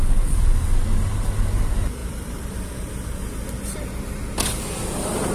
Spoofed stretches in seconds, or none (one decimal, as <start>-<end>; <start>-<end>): 2.0-2.7

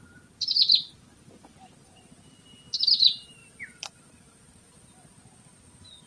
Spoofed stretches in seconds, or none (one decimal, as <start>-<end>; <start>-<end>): 3.4-3.9

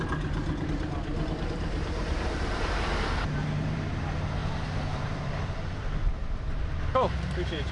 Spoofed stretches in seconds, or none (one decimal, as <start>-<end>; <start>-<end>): 1.1-4.0; 4.4-5.3; 6.1-6.8

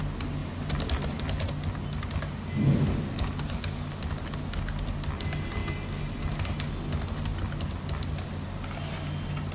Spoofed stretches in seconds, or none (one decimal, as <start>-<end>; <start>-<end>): none

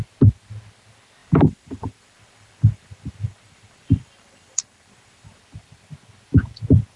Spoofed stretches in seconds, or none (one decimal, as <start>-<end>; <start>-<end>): 1.2-5.4

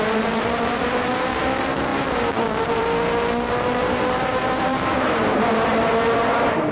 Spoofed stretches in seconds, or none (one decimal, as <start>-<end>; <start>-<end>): 0.0-6.7